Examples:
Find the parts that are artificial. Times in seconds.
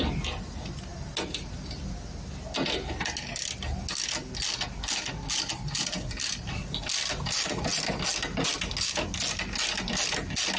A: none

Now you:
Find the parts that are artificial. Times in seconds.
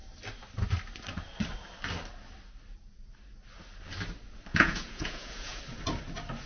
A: 4.5-5.6 (vocoder, Vocos)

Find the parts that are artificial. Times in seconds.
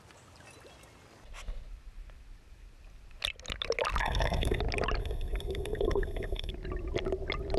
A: 4.0-4.6 (codec, SNAC); 5.0-6.5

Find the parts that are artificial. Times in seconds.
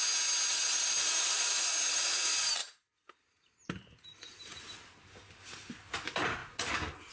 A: 0.5-2.0 (vocoder, BigVGAN v2); 2.6-4.6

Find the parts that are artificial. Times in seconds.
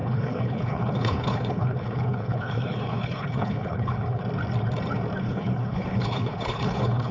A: 0.0-4.2 (codec, HILCodec); 5.2-7.1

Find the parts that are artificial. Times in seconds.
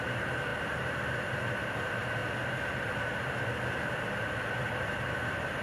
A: 0.0-0.5 (vocoder, BigVGAN v2); 1.2-2.2; 4.8-5.6